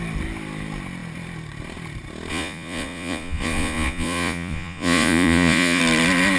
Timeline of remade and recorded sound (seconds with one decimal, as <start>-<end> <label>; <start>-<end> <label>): 0.0-2.3 recorded; 2.3-5.8 remade; 5.8-6.4 recorded